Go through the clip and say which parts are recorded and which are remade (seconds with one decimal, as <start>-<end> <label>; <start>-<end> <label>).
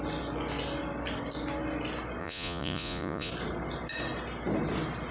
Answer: 0.0-2.2 recorded; 2.2-3.3 remade; 3.3-5.1 recorded